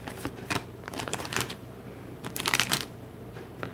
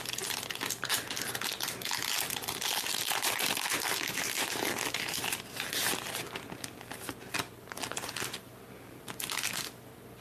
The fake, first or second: first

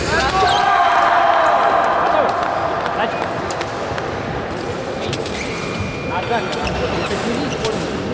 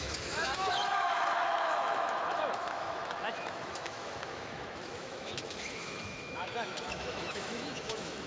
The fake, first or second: second